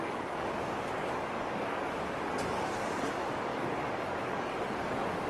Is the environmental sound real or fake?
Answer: fake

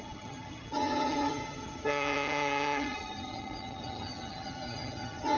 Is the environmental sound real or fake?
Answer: fake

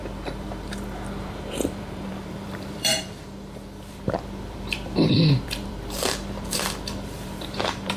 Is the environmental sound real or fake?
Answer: fake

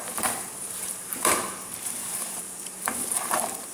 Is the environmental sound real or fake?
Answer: fake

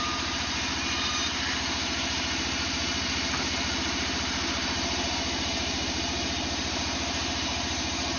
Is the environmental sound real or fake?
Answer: fake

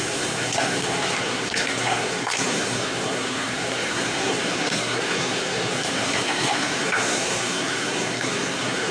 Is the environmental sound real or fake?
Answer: fake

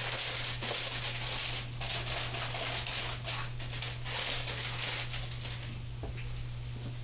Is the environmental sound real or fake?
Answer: real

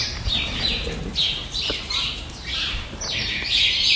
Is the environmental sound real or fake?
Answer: fake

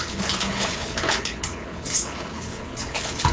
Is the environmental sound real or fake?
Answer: fake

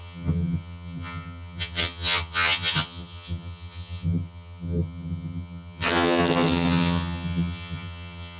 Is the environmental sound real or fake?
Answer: fake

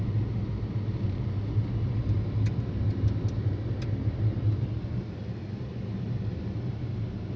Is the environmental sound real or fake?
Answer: real